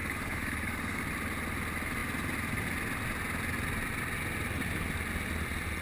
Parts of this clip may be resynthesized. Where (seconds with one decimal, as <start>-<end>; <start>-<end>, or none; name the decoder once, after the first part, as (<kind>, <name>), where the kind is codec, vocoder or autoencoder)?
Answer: 0.0-1.0 (codec, DAC)